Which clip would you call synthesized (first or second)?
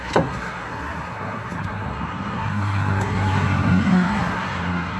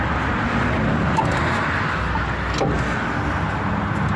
first